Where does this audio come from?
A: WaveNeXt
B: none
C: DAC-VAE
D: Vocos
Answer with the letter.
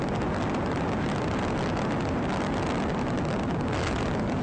B